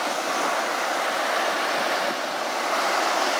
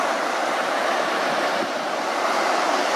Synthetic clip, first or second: second